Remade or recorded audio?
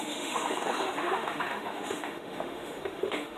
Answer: remade